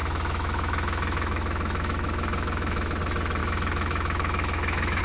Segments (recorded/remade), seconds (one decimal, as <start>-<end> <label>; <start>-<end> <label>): 0.0-3.0 remade; 3.0-3.4 recorded; 3.4-5.0 remade